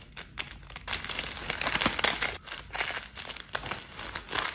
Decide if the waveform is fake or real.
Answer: real